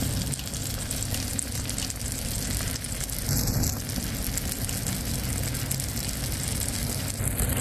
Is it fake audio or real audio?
real